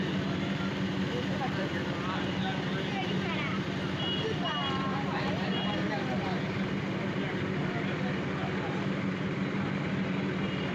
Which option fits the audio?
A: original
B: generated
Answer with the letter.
A